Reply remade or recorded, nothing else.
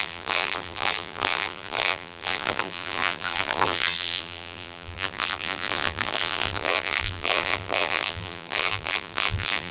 remade